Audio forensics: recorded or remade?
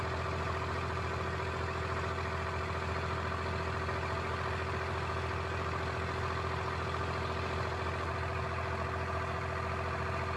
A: recorded